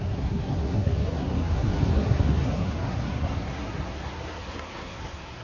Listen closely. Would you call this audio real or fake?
fake